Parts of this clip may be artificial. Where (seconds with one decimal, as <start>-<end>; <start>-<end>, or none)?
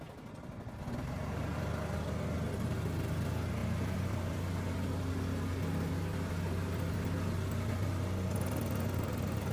none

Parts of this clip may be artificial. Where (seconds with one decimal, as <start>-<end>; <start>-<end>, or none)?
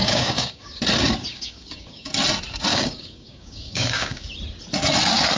0.0-0.8; 1.3-2.1; 2.7-4.3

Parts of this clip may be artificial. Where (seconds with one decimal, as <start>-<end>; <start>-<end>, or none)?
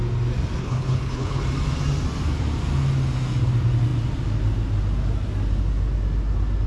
0.6-1.4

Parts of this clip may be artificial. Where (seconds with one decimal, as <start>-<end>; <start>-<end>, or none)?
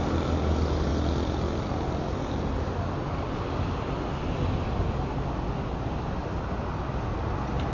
none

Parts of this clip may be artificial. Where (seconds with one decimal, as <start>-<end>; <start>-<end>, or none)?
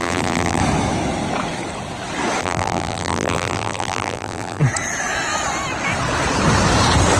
0.0-0.6; 2.4-4.6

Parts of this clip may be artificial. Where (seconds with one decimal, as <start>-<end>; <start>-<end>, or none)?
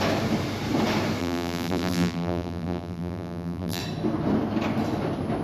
1.2-3.8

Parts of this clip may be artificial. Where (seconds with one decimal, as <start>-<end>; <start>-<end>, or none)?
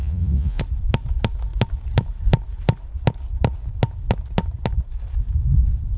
0.0-0.6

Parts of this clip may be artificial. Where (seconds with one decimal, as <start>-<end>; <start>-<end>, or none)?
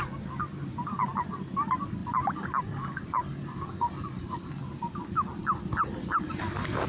none